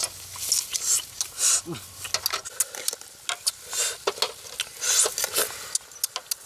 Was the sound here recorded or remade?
recorded